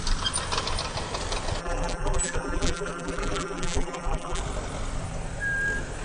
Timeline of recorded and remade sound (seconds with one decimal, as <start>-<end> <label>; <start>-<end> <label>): 0.0-1.6 recorded; 1.6-4.4 remade; 4.4-6.0 recorded